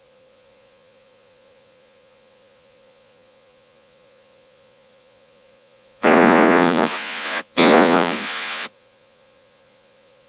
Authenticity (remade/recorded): remade